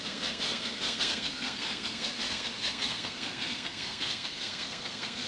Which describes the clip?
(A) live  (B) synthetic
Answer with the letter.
B